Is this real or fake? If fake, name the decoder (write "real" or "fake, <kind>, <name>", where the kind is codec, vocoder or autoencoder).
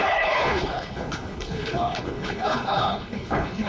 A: fake, codec, HILCodec